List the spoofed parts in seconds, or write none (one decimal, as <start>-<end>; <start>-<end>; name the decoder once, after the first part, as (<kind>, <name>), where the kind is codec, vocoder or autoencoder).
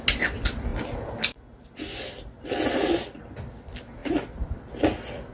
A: none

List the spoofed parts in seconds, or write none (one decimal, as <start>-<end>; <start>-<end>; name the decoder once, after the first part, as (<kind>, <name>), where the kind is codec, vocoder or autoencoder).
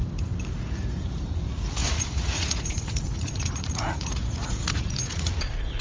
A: 1.8-5.3 (vocoder, Vocos)